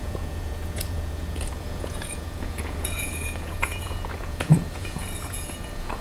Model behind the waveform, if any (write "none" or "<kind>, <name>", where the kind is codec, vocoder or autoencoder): vocoder, Vocos